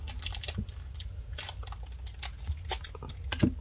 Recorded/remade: recorded